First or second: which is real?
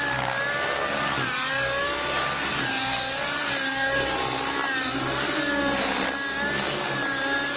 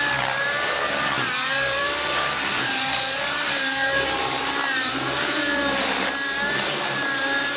first